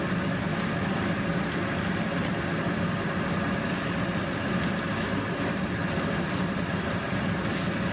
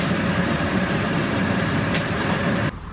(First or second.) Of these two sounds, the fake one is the second